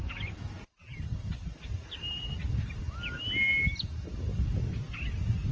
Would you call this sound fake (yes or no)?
no